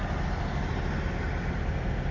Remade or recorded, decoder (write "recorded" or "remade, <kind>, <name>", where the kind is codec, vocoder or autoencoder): recorded